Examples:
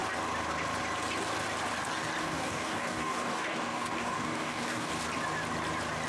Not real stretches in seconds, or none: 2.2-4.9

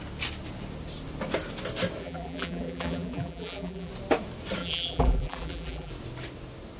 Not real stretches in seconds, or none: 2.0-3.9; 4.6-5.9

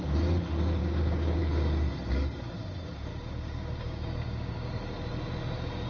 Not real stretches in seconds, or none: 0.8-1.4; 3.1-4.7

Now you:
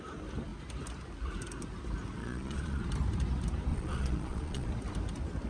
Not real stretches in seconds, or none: 2.2-2.8; 3.7-4.7

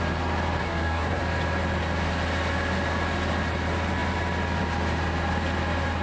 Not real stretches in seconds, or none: 0.6-1.2